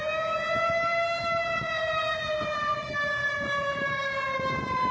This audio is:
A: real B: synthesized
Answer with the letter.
A